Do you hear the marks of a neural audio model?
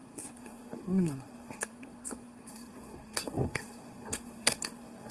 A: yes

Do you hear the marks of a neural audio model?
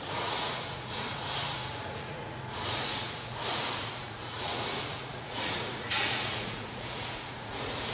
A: yes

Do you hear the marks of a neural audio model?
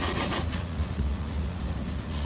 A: yes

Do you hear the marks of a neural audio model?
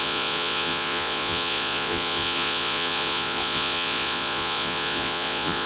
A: yes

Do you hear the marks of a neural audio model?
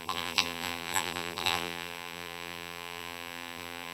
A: yes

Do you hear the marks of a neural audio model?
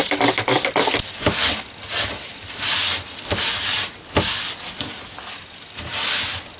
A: no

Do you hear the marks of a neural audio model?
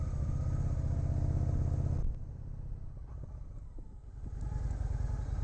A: no